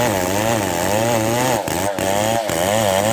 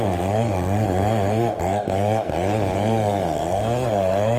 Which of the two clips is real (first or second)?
first